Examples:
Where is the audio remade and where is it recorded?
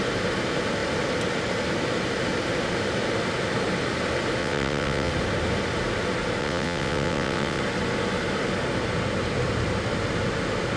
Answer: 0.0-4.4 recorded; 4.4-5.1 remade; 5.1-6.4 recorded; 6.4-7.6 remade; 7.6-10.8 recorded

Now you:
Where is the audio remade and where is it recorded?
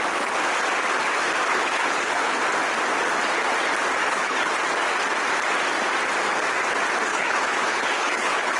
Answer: 0.0-1.5 recorded; 1.5-2.4 remade; 2.4-4.0 recorded; 4.0-4.6 remade; 4.6-7.1 recorded; 7.1-8.6 remade